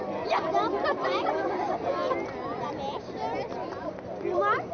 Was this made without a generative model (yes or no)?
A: yes